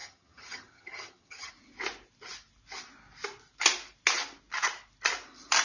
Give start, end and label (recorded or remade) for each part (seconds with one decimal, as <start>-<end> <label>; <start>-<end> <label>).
0.0-1.5 remade; 1.5-5.6 recorded